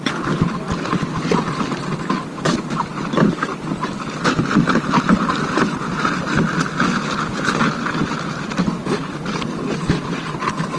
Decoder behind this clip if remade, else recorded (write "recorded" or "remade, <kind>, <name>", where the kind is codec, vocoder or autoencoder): recorded